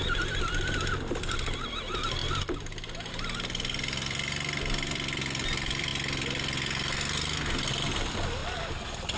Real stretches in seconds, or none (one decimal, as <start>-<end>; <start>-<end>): 2.2-3.1; 5.9-7.7; 8.4-9.2

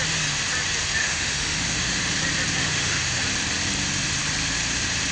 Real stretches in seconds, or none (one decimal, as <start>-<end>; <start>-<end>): 0.0-1.0; 2.1-2.6; 3.2-5.1

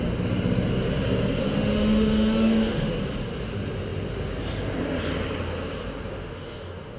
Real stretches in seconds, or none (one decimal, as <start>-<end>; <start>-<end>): 0.0-1.4; 3.0-6.1

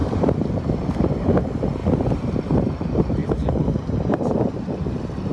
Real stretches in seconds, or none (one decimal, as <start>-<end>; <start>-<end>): 1.8-2.5; 3.2-3.8

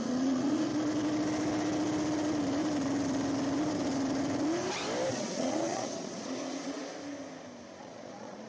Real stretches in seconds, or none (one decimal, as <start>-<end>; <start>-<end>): 0.7-5.1; 6.9-7.8